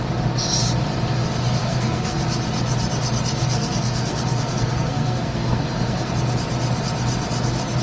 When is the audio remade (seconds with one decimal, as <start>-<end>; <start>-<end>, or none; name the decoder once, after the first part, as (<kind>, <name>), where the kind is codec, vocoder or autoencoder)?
1.6-2.2 (codec, SNAC); 3.4-6.1